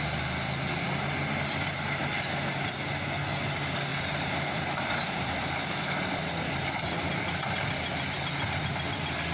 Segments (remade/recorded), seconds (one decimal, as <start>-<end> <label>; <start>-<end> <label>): 0.0-3.9 recorded; 3.9-5.4 remade; 5.4-9.3 recorded